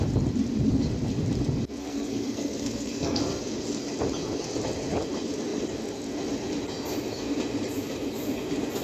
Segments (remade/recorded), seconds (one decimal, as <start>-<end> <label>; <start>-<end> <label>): 0.0-1.8 recorded; 1.8-3.4 remade; 3.4-8.8 recorded